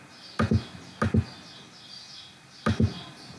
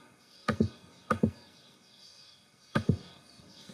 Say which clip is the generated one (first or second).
second